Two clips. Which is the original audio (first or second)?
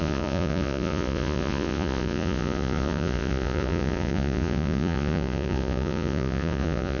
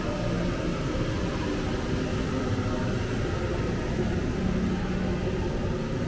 second